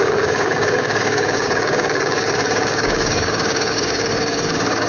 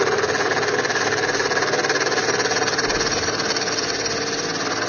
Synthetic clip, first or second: first